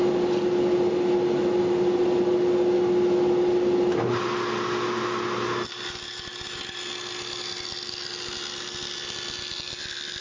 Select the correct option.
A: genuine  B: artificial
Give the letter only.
A